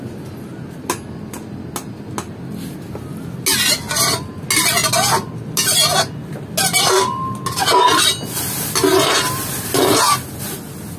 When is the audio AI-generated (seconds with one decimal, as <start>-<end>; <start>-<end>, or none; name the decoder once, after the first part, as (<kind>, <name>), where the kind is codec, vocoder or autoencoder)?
none